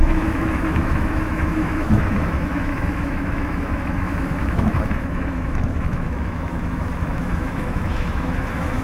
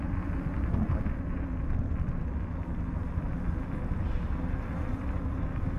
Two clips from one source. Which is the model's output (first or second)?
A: first